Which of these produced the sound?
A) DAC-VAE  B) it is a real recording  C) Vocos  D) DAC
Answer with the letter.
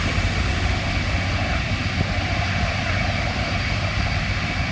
B